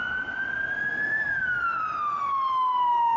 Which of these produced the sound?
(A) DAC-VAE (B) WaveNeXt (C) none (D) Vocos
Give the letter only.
C